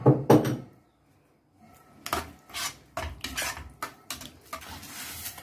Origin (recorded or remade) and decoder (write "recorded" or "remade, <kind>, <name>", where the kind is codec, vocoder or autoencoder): recorded